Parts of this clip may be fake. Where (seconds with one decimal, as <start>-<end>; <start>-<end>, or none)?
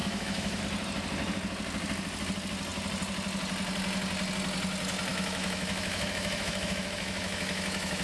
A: 0.0-0.6; 5.1-8.0